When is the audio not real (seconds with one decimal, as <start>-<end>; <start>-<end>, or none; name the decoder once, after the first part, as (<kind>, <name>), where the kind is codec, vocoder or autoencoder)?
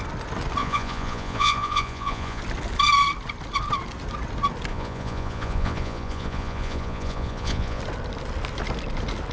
0.6-2.4 (vocoder, Vocos); 4.7-7.8